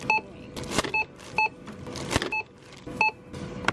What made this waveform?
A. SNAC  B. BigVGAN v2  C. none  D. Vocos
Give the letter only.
C